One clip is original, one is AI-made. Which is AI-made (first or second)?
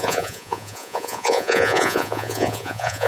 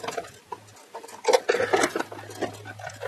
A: first